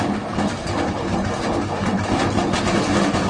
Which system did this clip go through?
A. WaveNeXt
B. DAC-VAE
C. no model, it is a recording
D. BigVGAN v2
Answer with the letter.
C